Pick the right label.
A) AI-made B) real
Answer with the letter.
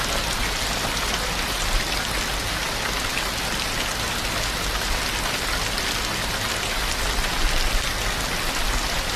B